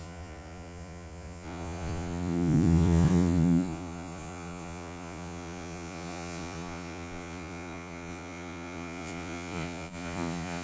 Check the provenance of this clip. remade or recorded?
remade